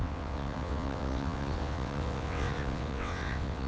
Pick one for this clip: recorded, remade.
remade